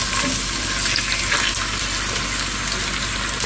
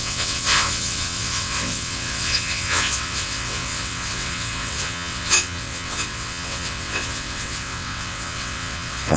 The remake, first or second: second